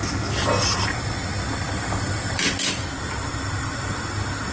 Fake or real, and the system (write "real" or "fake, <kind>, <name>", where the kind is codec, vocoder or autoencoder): real